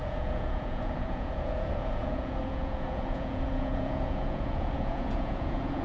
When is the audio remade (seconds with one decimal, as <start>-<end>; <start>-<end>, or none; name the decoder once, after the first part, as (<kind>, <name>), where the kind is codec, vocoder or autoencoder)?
0.0-5.8 (vocoder, Vocos)